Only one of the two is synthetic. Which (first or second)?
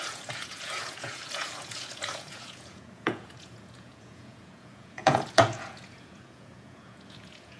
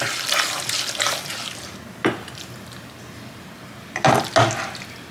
first